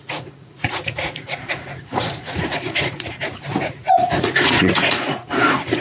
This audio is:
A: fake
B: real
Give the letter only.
A